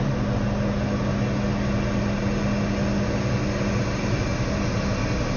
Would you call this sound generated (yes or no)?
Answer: no